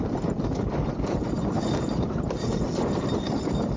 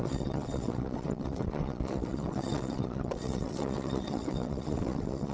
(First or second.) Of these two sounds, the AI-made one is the second